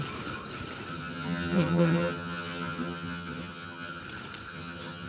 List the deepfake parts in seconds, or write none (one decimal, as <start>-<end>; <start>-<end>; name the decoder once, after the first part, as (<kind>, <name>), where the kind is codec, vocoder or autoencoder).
0.9-4.0 (vocoder, HiFi-GAN); 4.5-5.1